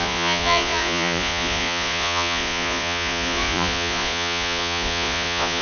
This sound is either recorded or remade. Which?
remade